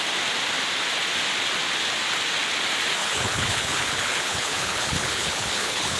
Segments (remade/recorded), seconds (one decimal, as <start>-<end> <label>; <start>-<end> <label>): 0.0-3.0 recorded; 3.0-6.0 remade